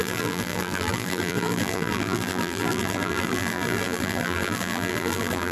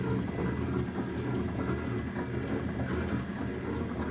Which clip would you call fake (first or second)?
first